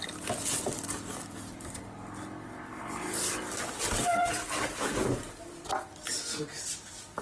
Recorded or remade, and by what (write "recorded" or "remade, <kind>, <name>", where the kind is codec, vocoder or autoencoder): recorded